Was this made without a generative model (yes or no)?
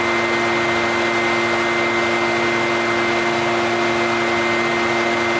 yes